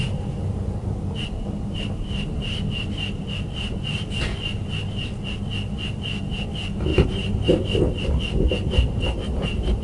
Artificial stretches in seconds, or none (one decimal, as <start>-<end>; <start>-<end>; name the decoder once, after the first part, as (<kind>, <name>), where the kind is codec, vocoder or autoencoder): 6.9-7.8 (vocoder, BigVGAN v2)